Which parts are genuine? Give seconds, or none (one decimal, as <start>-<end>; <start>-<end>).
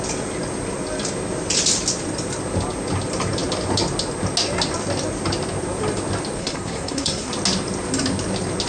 0.0-6.4; 7.3-8.7